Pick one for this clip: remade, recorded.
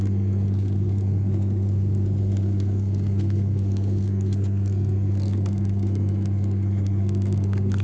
remade